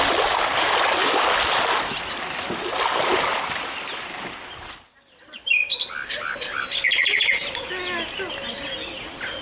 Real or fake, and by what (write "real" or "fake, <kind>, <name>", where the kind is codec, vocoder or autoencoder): real